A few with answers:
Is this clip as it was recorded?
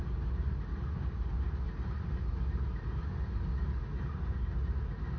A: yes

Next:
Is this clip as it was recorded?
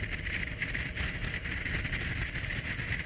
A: yes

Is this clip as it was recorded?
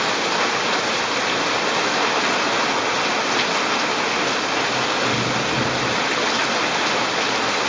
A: yes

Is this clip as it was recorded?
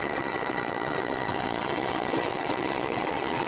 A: no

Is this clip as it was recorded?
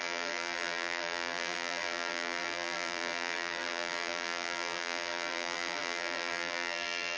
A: no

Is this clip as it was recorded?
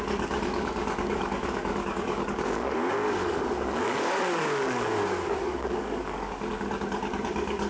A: no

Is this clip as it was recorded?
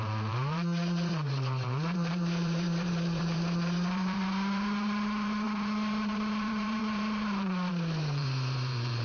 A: no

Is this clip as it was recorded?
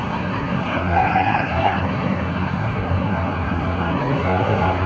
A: no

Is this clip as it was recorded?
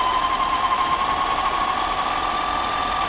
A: yes